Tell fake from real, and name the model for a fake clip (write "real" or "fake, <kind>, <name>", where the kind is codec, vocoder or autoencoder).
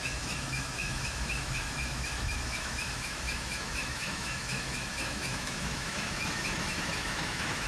fake, autoencoder, DAC-VAE